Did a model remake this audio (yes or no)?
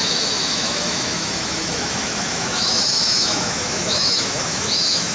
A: yes